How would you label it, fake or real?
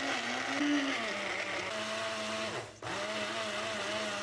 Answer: real